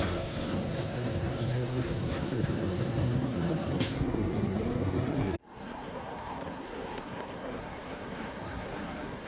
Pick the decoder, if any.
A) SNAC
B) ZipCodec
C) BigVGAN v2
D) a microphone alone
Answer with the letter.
A